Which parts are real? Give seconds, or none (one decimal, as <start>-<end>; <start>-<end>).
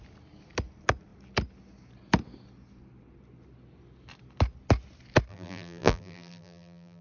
0.0-5.3